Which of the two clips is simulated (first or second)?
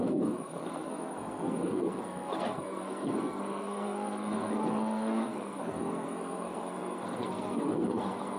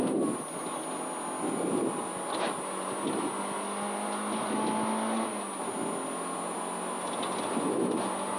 first